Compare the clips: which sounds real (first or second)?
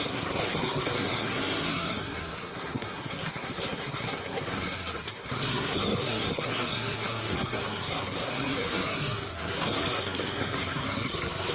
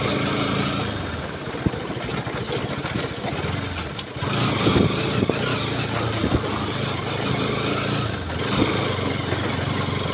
second